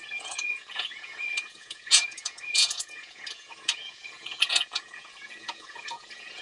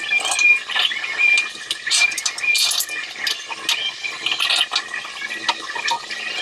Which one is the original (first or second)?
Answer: second